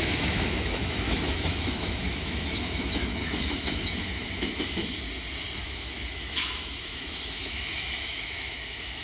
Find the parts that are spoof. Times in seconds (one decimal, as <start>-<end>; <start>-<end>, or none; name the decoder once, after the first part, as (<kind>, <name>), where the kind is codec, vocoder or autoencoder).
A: 0.0-4.8 (autoencoder, DAC-VAE); 5.6-9.0